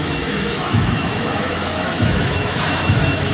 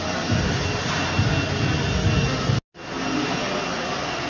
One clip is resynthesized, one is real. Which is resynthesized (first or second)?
first